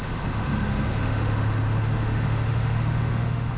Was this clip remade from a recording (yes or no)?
yes